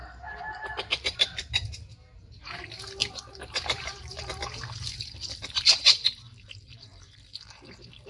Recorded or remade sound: remade